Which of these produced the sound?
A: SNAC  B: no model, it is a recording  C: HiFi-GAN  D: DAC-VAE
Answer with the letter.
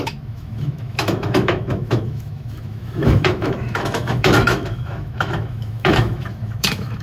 D